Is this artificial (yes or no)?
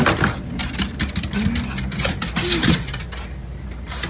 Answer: no